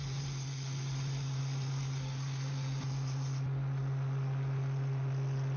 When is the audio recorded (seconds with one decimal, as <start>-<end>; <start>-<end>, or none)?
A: 0.0-5.6

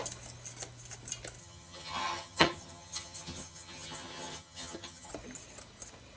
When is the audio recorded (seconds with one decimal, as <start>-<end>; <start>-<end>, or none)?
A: 0.0-1.4; 5.1-6.2

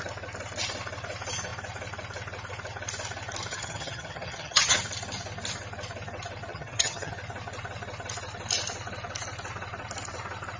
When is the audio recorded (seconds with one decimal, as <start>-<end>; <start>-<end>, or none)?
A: 0.0-3.5; 4.8-6.5; 7.1-10.6

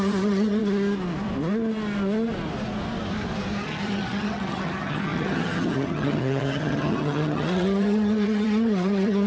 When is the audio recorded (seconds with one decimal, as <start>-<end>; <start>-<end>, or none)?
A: 0.6-3.6

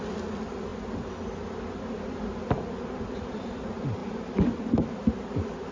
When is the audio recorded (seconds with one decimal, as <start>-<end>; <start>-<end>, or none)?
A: 0.0-5.7

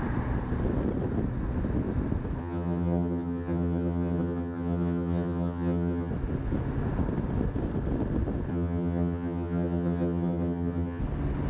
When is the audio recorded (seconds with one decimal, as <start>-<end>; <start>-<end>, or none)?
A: 0.0-2.4; 6.1-8.5; 11.0-11.5